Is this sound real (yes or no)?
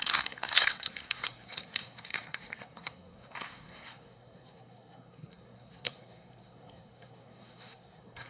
no